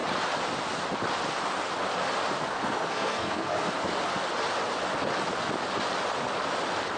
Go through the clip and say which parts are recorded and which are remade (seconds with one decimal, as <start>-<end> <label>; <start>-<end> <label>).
0.0-2.5 recorded; 2.5-3.7 remade; 3.7-7.0 recorded

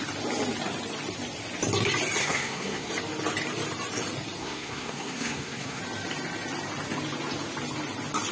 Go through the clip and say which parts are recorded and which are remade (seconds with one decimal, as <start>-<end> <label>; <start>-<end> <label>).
0.0-2.2 recorded; 2.2-2.9 remade; 2.9-4.4 recorded; 4.4-5.8 remade; 5.8-8.3 recorded

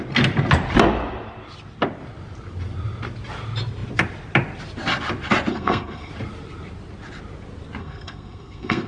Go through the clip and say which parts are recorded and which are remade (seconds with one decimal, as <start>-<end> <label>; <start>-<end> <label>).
0.0-5.5 recorded; 5.5-6.1 remade; 6.1-7.8 recorded; 7.8-8.9 remade

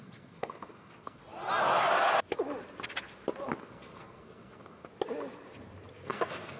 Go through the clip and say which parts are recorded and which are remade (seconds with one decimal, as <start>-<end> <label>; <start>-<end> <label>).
0.0-1.2 remade; 1.2-3.6 recorded; 3.6-4.9 remade; 4.9-5.9 recorded; 5.9-6.6 remade